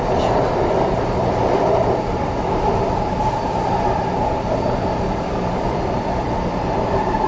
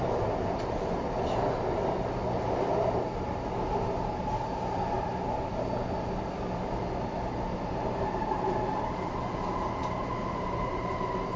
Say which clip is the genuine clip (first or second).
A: second